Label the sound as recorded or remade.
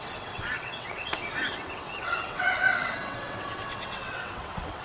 remade